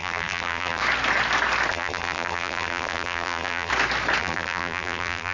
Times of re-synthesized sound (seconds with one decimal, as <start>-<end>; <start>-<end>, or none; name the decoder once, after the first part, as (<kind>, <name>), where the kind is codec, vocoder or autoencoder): 0.0-0.8 (vocoder, BigVGAN v2); 1.7-3.7; 4.2-5.3